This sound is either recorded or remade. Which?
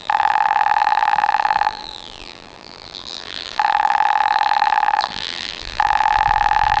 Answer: remade